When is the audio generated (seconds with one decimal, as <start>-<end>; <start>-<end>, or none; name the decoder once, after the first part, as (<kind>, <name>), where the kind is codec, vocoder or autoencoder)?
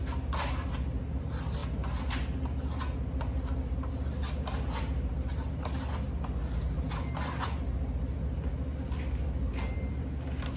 none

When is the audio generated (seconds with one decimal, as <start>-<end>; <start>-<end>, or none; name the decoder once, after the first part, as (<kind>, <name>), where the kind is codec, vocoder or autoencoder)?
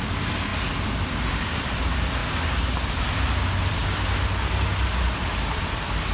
0.0-2.2 (vocoder, BigVGAN v2); 3.0-3.8; 4.9-6.1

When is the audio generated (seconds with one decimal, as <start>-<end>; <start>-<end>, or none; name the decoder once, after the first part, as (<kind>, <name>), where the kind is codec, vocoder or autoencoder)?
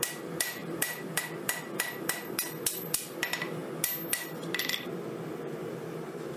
0.0-3.6 (vocoder, BigVGAN v2); 4.6-6.4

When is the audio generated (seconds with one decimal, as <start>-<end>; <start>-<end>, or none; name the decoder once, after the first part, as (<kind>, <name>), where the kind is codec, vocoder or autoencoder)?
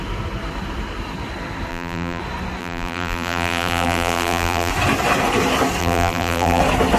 1.7-2.2 (vocoder, BigVGAN v2); 2.6-4.7; 5.8-6.6